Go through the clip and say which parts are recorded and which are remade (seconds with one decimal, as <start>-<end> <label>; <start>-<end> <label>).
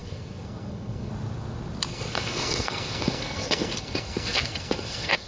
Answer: 0.0-1.1 remade; 1.1-1.9 recorded; 1.9-5.3 remade